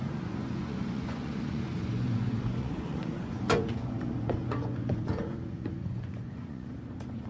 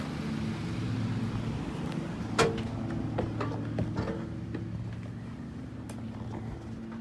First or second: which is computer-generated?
first